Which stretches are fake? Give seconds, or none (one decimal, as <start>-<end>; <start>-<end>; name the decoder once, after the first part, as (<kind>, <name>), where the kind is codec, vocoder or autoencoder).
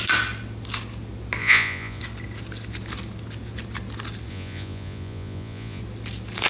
1.4-2.0 (vocoder, Vocos); 4.3-5.8